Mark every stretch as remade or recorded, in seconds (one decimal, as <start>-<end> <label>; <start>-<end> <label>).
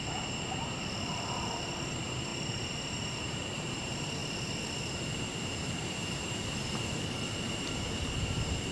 0.0-4.2 remade; 4.2-4.8 recorded; 4.8-8.7 remade